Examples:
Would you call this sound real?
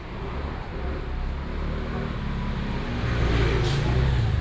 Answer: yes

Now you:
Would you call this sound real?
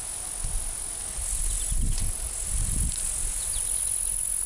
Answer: yes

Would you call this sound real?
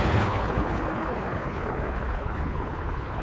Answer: no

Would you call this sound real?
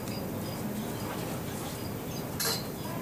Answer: yes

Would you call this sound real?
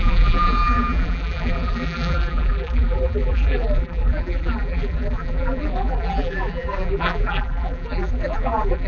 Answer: no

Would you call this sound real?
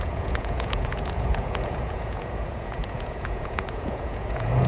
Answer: no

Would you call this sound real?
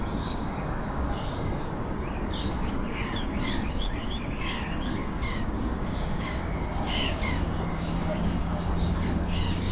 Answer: no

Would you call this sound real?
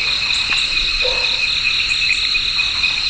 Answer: yes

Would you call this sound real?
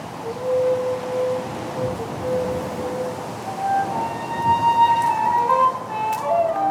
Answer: yes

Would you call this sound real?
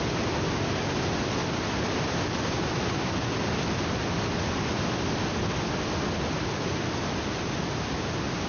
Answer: yes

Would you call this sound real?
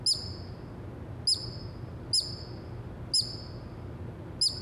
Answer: yes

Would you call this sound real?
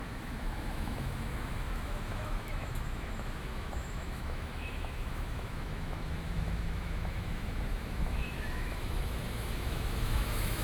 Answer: no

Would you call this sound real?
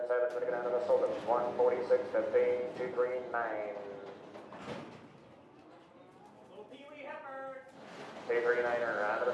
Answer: yes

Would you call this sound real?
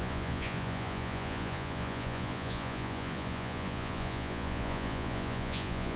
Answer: no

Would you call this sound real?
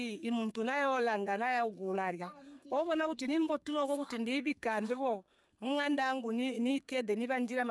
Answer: no